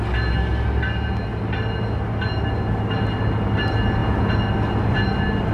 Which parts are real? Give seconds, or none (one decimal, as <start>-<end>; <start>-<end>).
0.0-5.5